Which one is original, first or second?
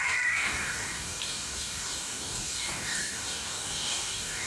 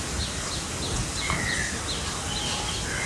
second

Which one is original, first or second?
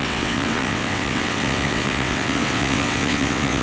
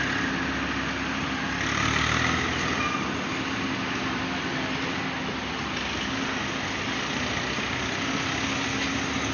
second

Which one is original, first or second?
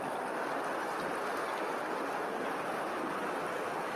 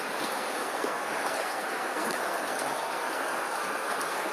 first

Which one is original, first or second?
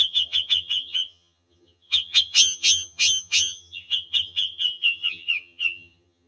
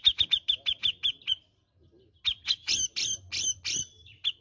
second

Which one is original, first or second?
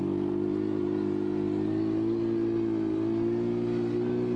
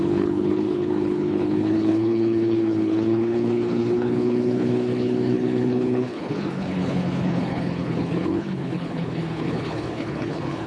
first